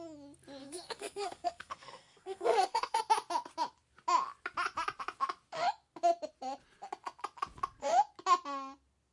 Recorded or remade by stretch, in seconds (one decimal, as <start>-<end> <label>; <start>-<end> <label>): 0.0-0.6 recorded; 0.6-3.0 remade; 3.0-9.1 recorded